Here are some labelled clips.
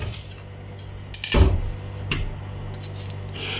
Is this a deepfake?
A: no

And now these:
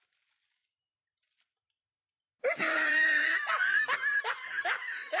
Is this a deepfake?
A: yes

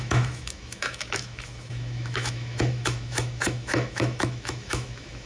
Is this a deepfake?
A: yes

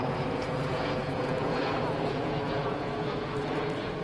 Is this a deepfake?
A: yes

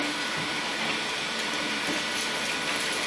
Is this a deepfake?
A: yes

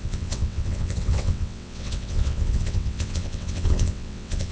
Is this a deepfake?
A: yes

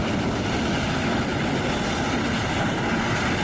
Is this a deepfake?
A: no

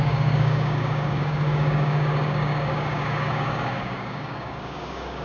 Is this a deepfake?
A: yes